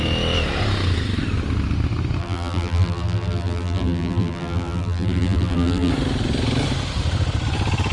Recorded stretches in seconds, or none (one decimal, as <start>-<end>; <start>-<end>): 0.0-2.2; 5.9-7.9